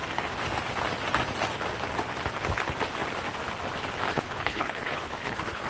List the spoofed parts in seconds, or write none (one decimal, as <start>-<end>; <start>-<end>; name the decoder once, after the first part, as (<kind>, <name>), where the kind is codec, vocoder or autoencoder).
4.1-5.7 (codec, HILCodec)